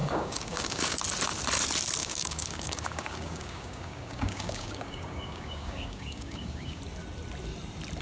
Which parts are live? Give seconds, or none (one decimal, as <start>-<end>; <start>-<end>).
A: 1.0-2.0; 6.8-8.0